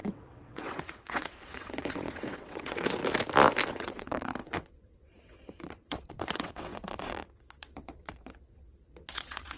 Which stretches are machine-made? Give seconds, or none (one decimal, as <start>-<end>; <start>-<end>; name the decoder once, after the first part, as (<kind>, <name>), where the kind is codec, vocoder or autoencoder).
0.0-3.0 (vocoder, WaveNeXt); 3.7-9.6